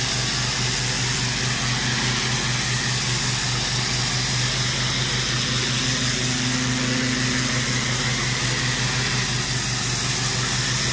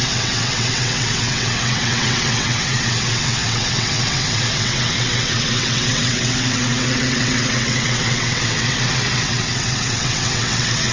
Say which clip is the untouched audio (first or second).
first